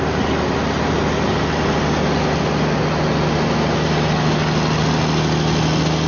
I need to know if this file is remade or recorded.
recorded